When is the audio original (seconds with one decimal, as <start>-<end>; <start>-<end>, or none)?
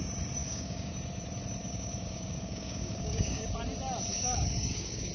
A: 0.0-0.4; 0.9-1.6; 3.4-4.1